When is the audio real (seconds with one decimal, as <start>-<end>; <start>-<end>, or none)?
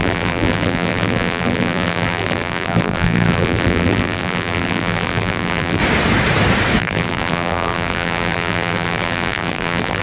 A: 5.8-6.8